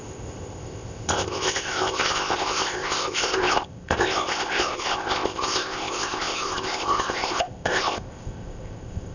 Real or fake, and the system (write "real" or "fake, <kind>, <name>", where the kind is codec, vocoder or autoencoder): fake, codec, ZipCodec